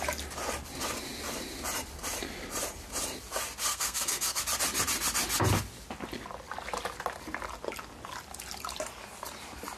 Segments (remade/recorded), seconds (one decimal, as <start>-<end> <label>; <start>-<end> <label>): 0.0-3.7 recorded; 3.7-4.4 remade; 4.4-9.8 recorded